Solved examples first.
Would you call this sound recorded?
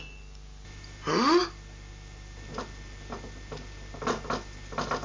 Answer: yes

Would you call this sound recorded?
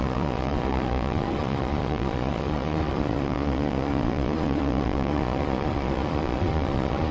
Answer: no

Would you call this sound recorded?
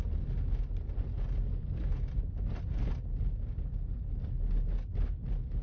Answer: yes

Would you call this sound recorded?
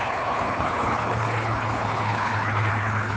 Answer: no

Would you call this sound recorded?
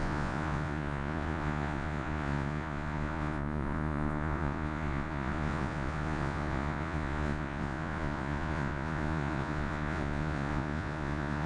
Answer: no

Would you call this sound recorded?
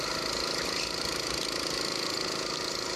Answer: yes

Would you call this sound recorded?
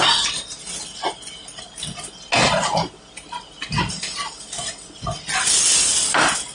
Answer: yes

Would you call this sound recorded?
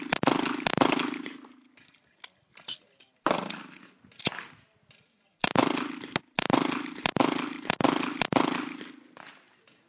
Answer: yes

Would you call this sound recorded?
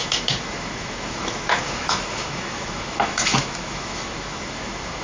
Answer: no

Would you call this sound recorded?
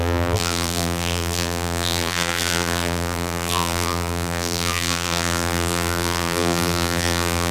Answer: no